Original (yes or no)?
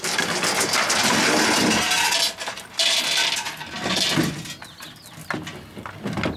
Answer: yes